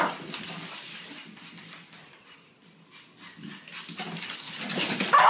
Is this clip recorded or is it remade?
recorded